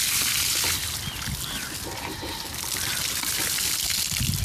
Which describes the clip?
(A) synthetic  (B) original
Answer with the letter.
B